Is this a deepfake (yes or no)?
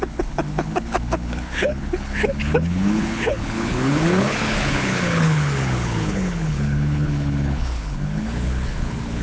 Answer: yes